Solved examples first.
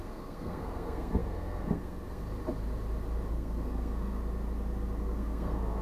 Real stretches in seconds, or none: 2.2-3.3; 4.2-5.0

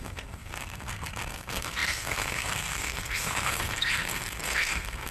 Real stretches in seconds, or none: none

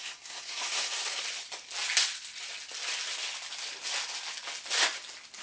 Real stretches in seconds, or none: 1.2-5.4

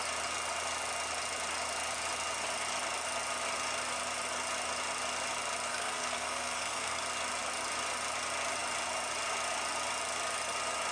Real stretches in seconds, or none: 0.0-5.7; 7.0-10.9

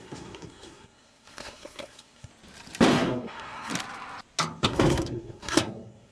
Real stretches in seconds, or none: 2.3-2.9; 3.7-4.6